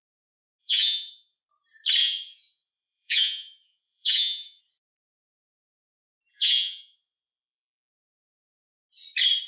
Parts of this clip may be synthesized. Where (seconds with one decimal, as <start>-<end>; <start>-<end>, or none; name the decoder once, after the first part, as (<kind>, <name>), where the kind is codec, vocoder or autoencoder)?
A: 0.6-1.4 (vocoder, Vocos); 2.0-4.6; 6.3-7.9